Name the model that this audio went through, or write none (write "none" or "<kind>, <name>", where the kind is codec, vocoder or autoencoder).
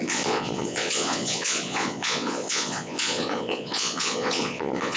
vocoder, Vocos